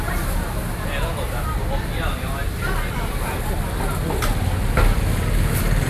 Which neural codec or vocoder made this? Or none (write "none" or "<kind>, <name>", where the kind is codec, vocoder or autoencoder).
none